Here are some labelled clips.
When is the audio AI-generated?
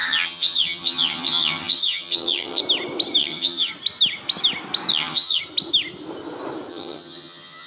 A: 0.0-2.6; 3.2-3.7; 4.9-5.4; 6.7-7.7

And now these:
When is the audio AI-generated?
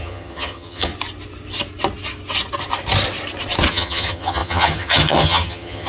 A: 0.0-0.9; 3.7-5.9